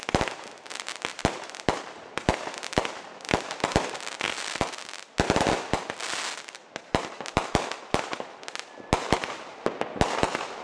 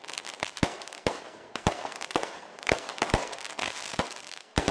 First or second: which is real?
first